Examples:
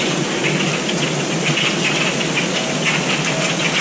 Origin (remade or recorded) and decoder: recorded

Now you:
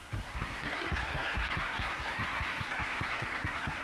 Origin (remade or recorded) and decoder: remade, codec, SNAC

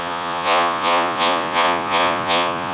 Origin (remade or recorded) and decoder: remade, vocoder, Vocos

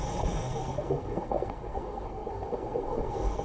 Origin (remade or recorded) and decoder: remade, codec, SNAC